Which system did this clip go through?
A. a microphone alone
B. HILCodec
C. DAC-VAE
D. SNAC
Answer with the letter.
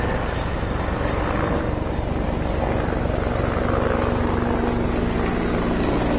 A